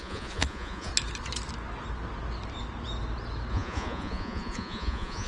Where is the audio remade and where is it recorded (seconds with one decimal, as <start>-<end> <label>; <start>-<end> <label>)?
0.0-0.9 remade; 0.9-3.5 recorded; 3.5-5.3 remade